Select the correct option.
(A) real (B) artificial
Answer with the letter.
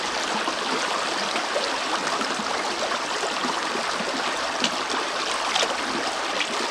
A